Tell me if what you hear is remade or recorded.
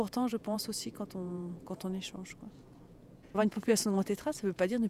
remade